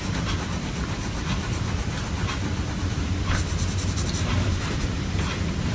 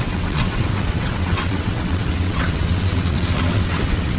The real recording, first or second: first